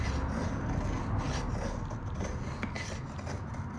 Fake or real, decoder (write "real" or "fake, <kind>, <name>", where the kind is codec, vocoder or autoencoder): real